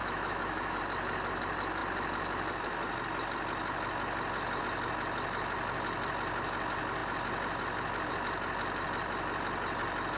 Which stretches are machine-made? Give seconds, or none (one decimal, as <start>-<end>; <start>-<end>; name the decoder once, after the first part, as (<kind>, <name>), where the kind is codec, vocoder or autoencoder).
0.0-0.8 (autoencoder, DAC-VAE)